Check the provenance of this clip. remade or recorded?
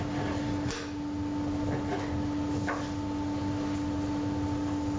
recorded